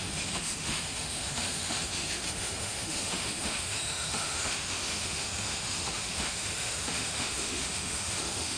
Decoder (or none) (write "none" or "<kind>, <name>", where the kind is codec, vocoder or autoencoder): autoencoder, DAC-VAE